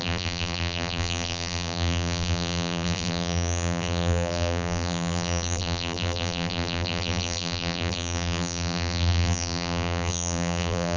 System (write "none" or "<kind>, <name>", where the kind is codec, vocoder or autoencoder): vocoder, BigVGAN v2